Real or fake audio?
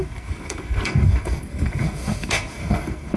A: fake